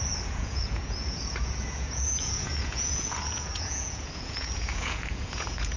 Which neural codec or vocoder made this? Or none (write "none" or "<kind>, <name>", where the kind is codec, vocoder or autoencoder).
vocoder, Vocos